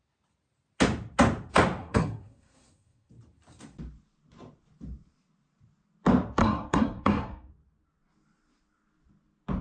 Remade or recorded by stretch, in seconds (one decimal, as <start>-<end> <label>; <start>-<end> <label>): 0.0-1.8 recorded; 1.8-3.1 remade; 3.1-6.4 recorded; 6.4-7.5 remade; 7.5-9.6 recorded